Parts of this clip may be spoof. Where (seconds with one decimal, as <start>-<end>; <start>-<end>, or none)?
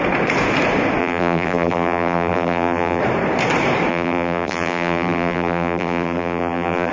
1.0-3.0; 3.9-6.9